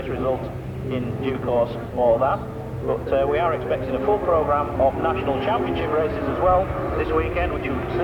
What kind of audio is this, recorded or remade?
recorded